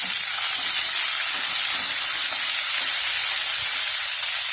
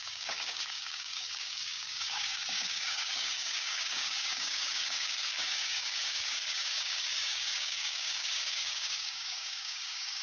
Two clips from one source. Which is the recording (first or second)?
first